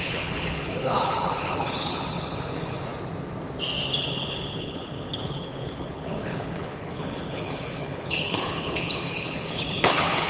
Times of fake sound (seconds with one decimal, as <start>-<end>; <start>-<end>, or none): 0.0-2.9; 4.0-10.3